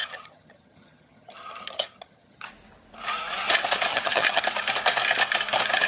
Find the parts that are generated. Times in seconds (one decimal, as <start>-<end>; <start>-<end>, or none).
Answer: 0.0-2.5; 3.9-4.4